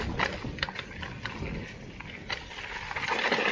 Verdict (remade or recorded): recorded